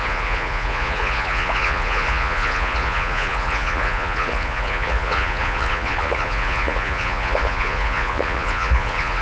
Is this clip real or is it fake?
fake